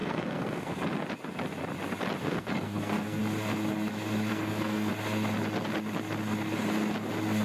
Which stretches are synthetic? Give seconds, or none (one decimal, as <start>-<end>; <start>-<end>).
0.0-0.8; 2.2-3.2; 4.3-4.9